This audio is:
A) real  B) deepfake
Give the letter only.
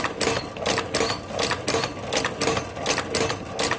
A